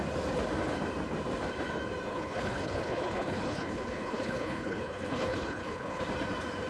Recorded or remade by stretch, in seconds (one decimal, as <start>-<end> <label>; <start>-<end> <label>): 0.0-2.1 recorded; 2.1-6.0 remade; 6.0-6.7 recorded